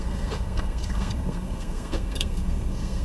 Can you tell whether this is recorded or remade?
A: remade